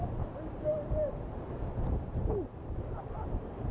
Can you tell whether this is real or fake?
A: fake